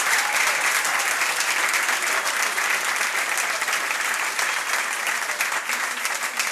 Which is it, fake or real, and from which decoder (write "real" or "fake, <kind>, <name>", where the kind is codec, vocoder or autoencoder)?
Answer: real